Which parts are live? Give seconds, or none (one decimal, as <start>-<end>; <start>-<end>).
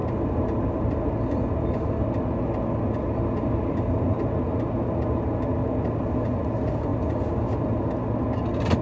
0.0-8.8